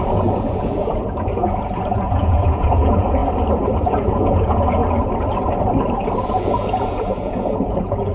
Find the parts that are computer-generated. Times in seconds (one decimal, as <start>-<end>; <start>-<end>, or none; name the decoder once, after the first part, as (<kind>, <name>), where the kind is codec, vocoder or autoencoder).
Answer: 0.0-3.2 (vocoder, Vocos); 3.9-4.8; 6.3-8.1